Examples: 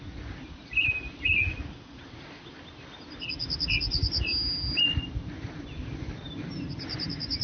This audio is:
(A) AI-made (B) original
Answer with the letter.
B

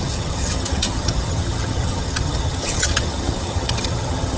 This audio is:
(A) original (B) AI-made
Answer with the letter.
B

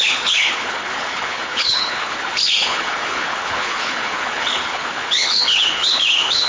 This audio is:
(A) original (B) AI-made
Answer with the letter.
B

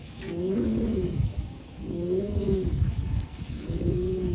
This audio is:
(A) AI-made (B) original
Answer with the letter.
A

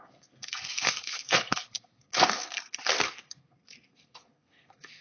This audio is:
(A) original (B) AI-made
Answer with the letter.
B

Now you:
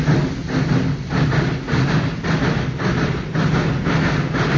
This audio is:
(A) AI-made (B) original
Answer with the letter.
B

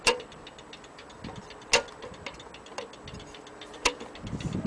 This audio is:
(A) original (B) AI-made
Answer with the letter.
A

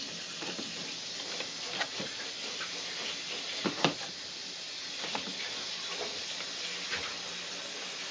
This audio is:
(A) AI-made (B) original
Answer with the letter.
B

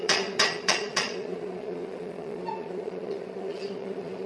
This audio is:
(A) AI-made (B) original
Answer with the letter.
A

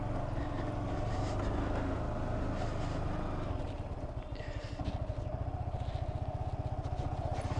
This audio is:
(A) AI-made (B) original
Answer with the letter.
B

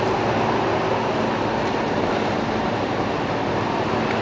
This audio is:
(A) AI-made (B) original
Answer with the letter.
B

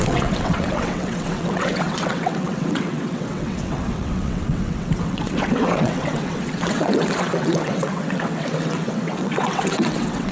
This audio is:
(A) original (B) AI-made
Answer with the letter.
B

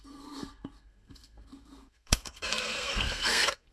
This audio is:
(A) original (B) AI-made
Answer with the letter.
B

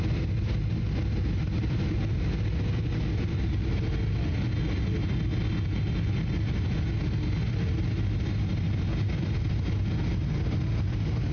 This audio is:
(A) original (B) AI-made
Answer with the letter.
A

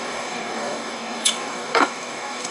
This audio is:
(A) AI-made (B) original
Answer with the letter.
A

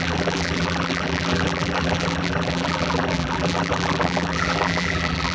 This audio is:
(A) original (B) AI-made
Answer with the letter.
B